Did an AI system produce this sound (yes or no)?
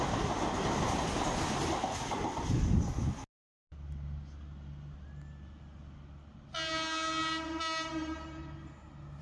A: no